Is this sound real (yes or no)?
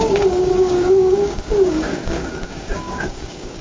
no